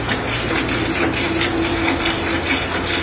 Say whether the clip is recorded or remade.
recorded